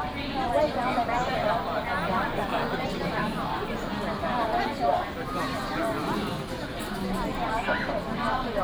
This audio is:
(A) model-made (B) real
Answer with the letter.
B